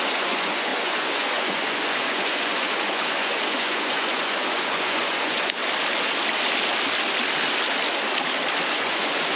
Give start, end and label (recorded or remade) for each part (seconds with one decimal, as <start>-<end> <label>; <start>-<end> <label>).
0.0-5.6 remade; 5.6-8.7 recorded; 8.7-9.4 remade